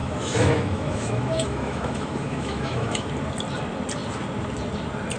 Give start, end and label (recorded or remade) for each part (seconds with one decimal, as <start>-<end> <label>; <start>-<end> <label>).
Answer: 0.0-3.1 remade; 3.1-5.2 recorded